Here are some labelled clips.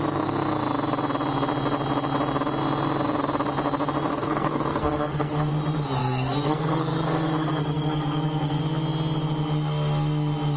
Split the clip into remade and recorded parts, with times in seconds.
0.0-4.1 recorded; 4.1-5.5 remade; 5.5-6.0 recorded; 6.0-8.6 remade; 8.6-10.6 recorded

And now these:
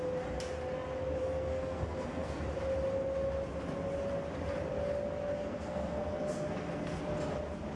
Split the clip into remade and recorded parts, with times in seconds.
0.0-1.2 recorded; 1.2-2.4 remade; 2.4-5.3 recorded; 5.3-7.0 remade; 7.0-7.8 recorded

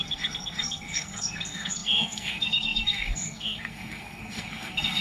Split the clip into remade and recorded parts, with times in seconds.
0.0-5.0 remade

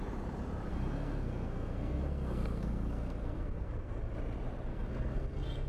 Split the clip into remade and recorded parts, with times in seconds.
0.0-0.7 recorded; 0.7-4.1 remade; 4.1-4.7 recorded; 4.7-5.7 remade

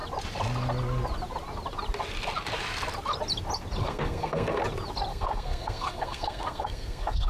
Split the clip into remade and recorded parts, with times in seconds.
0.0-3.8 recorded; 3.8-4.6 remade; 4.6-5.1 recorded; 5.1-7.3 remade